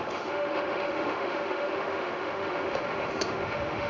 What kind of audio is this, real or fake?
fake